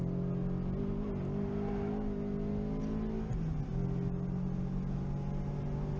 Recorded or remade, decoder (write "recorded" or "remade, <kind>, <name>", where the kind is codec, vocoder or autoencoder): recorded